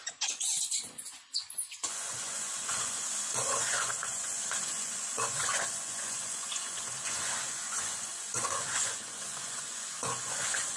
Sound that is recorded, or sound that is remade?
remade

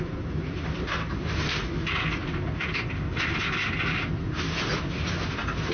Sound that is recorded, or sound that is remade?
remade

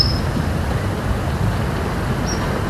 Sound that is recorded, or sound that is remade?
recorded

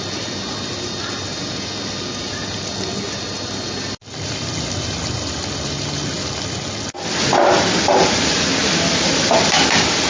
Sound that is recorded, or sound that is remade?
recorded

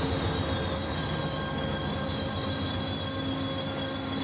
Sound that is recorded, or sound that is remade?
recorded